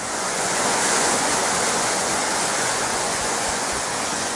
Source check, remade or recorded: remade